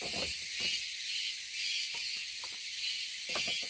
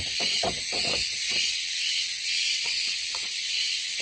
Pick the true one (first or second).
first